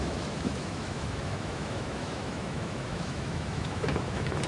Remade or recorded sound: remade